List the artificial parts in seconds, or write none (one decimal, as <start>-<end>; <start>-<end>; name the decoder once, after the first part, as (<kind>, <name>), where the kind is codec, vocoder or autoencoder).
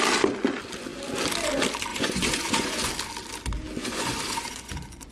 1.9-2.9 (vocoder, Vocos); 3.8-5.1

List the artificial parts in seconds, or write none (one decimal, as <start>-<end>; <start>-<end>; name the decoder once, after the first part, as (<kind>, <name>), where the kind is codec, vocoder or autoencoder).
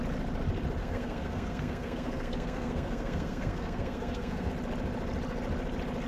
0.8-4.5 (codec, SNAC)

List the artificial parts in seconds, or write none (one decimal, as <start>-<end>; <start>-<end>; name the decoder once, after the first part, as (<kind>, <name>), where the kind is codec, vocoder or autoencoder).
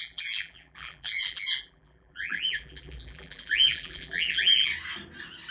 0.0-4.7 (vocoder, BigVGAN v2)